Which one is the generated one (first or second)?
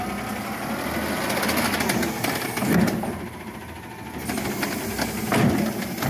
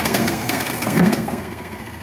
second